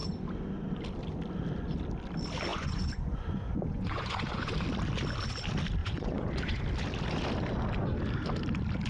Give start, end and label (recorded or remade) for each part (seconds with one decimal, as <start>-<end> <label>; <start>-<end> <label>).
0.0-2.5 recorded; 2.5-4.5 remade; 4.5-5.8 recorded; 5.8-6.6 remade; 6.6-8.9 recorded